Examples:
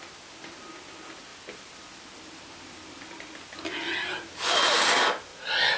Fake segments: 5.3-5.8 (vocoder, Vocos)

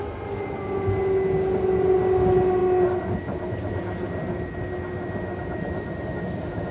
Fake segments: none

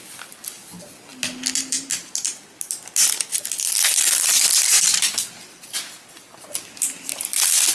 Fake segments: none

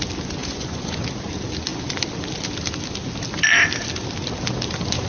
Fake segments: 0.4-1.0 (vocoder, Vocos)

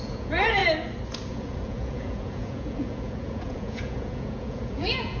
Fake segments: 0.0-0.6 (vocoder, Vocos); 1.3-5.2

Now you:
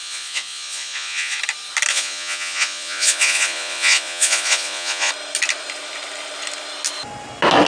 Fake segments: 0.0-1.4 (vocoder, Vocos); 1.9-5.1

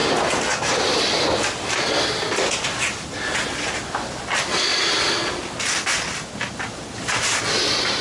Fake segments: none

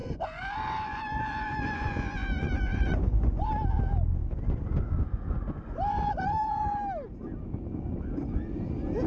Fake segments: 0.0-3.5 (vocoder, Vocos); 4.1-6.8